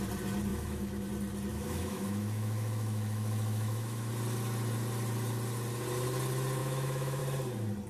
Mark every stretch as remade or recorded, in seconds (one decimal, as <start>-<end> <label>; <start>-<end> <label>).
0.0-0.5 recorded; 0.5-1.1 remade; 1.1-1.5 recorded; 1.5-4.1 remade; 4.1-6.6 recorded; 6.6-7.2 remade; 7.2-7.9 recorded